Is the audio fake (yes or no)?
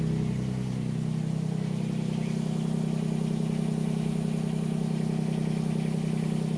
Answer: no